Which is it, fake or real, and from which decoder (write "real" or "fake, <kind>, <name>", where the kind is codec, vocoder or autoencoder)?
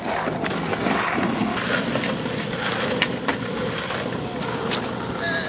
real